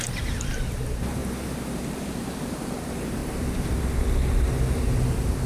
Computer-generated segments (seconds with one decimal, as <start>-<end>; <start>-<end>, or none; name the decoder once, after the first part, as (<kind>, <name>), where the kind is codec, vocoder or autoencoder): 0.0-1.2 (vocoder, BigVGAN v2); 1.7-3.2; 4.3-5.5